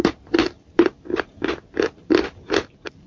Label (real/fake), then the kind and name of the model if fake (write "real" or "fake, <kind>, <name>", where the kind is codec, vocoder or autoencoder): real